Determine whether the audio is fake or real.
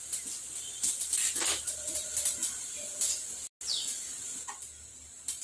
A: real